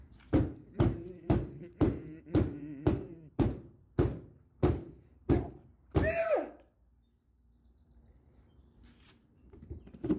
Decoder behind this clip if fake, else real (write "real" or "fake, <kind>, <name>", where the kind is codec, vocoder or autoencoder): fake, vocoder, BigVGAN v2